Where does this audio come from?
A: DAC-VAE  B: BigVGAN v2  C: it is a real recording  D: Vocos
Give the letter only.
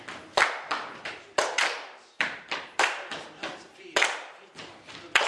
B